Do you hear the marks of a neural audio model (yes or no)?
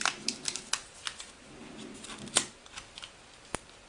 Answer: no